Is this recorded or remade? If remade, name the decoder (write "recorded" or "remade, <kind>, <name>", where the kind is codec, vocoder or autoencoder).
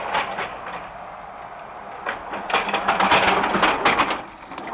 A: recorded